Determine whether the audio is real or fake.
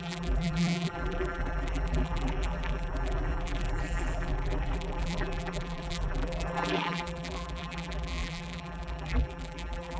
fake